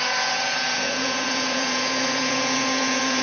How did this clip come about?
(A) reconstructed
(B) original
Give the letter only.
A